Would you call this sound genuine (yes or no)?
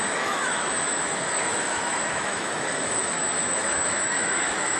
no